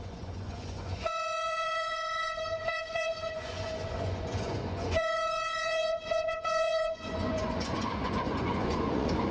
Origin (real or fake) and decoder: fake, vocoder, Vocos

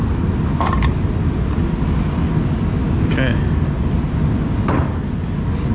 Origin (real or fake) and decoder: real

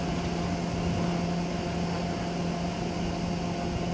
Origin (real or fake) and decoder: real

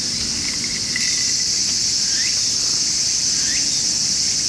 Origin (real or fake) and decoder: real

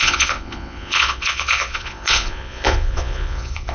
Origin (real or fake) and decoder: fake, vocoder, Vocos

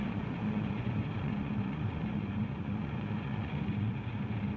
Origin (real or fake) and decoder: fake, vocoder, Vocos